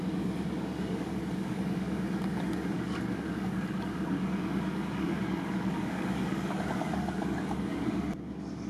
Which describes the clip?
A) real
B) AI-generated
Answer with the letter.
B